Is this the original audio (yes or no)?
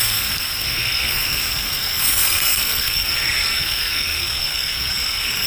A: no